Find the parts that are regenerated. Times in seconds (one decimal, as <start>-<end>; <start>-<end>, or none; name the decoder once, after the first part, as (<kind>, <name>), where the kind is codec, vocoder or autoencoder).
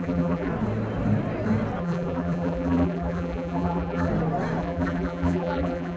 0.0-0.5 (vocoder, BigVGAN v2); 1.8-4.1; 4.6-6.0